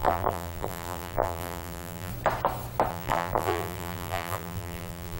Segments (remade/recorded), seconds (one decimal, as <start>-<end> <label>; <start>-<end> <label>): 0.0-2.1 remade; 2.1-2.9 recorded; 2.9-5.2 remade